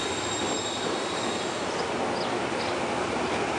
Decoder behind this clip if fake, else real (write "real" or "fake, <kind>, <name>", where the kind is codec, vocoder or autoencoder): real